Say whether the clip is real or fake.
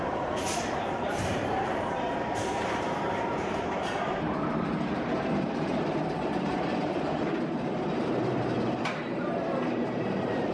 fake